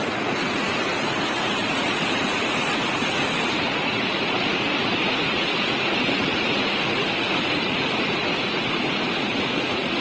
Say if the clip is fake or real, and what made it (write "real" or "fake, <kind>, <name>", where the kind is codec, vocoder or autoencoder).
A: fake, vocoder, Vocos